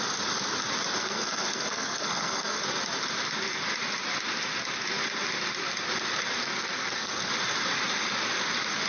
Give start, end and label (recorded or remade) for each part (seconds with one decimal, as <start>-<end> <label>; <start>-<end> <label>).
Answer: 0.0-1.0 recorded; 1.0-2.6 remade; 2.6-6.4 recorded; 6.4-7.3 remade; 7.3-8.9 recorded